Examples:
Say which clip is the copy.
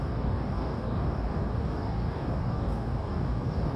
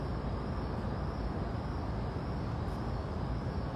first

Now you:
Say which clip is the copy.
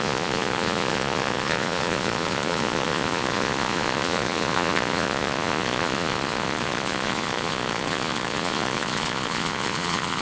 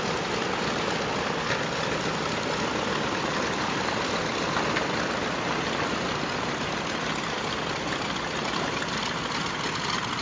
first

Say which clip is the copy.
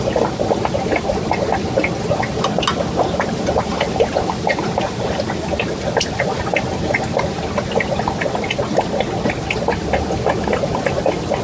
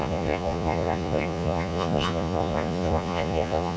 second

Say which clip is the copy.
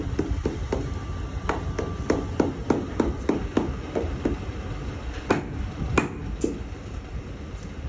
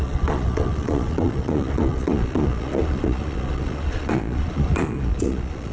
second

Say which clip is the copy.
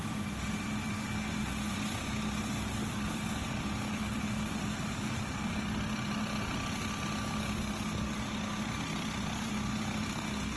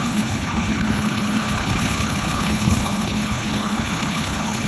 second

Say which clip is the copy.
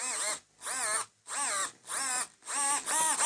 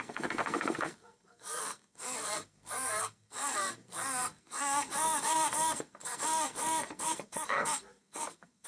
second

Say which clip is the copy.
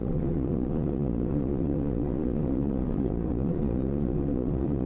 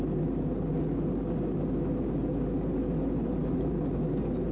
first